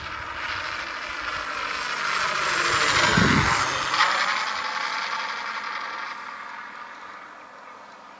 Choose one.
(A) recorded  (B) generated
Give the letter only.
A